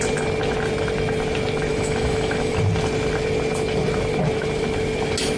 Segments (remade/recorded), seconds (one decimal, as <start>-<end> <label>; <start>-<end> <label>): 0.0-1.7 recorded; 1.7-2.6 remade; 2.6-5.4 recorded